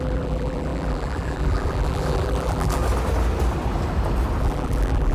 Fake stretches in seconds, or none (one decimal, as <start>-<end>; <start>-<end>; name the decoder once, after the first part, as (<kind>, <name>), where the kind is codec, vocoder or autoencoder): 0.0-2.8 (vocoder, BigVGAN v2); 4.4-5.1